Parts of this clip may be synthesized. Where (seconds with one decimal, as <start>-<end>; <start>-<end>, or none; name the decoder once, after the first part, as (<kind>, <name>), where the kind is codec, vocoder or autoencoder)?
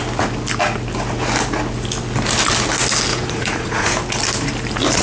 3.1-3.9 (vocoder, Vocos)